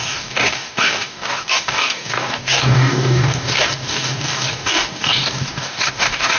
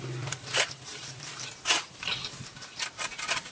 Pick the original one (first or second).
second